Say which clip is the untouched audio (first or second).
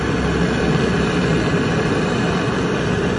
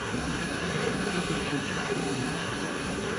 first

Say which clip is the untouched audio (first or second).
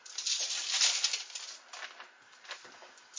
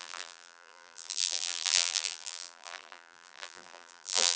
first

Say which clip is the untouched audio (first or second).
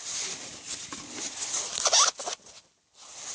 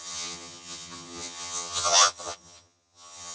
first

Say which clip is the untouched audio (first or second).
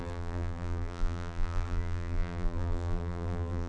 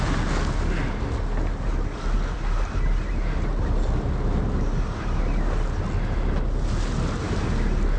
second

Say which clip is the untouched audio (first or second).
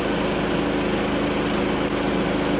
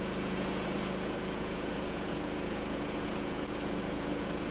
first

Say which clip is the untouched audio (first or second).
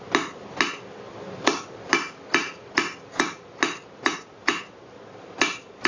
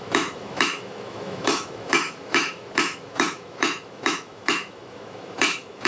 first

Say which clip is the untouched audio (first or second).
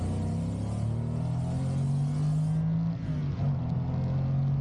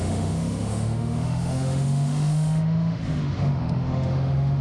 first